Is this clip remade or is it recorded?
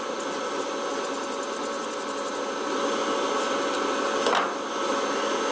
recorded